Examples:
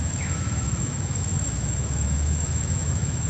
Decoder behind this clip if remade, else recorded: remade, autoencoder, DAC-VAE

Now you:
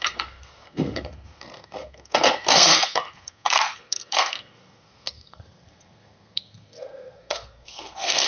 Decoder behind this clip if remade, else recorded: remade, codec, SNAC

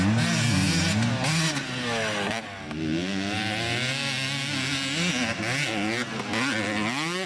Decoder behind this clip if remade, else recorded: recorded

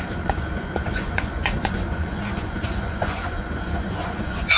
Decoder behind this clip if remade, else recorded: remade, vocoder, Vocos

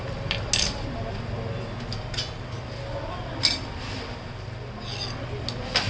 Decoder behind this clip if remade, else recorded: recorded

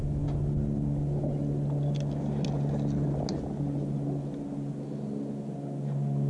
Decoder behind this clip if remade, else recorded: recorded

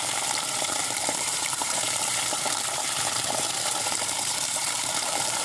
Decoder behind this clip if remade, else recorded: remade, vocoder, BigVGAN v2